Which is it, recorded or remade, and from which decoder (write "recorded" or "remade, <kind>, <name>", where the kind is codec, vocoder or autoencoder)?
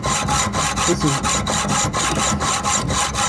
remade, vocoder, BigVGAN v2